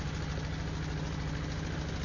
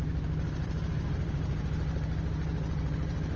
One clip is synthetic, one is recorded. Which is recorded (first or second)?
first